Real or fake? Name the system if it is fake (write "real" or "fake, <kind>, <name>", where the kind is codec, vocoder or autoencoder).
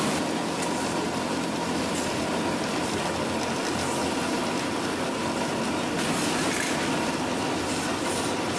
real